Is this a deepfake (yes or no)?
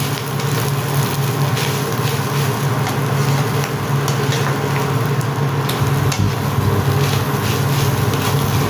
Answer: no